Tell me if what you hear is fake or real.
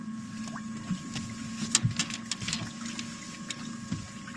real